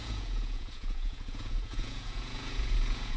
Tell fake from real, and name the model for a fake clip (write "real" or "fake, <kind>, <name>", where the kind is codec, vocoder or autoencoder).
fake, vocoder, Vocos